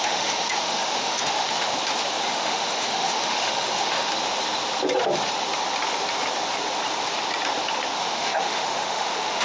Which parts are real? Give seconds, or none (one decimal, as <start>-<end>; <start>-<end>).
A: 1.7-2.3; 4.1-8.0